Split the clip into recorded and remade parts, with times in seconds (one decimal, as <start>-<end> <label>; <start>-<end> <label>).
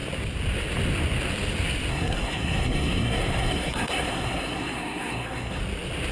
0.0-1.9 recorded; 1.9-5.6 remade; 5.6-6.1 recorded